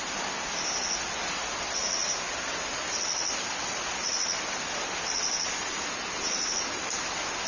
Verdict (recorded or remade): recorded